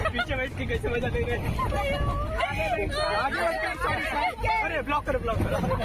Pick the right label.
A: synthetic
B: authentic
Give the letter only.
B